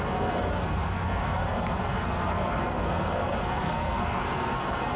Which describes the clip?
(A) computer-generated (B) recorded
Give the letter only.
A